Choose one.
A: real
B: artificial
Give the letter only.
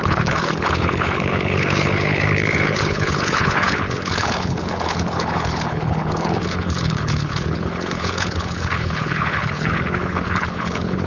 B